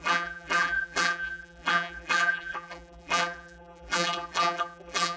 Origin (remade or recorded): remade